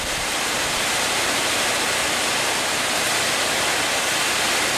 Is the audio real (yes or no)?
yes